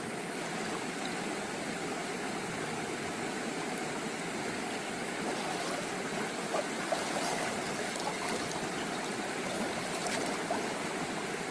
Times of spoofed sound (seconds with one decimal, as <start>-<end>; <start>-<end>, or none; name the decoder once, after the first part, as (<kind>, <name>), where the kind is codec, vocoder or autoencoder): none